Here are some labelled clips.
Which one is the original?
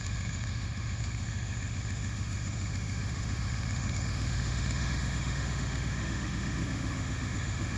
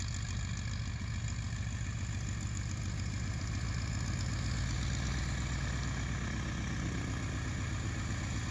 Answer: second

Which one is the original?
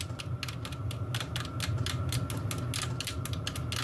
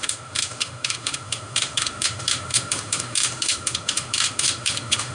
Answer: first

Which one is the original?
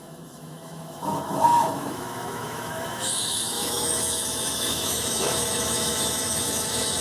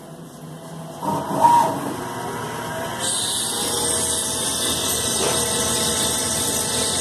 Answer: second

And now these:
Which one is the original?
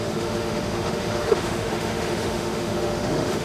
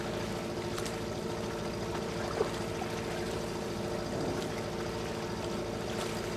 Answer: second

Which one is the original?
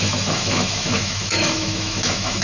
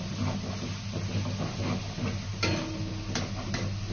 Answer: second